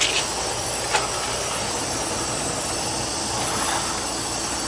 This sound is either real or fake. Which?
real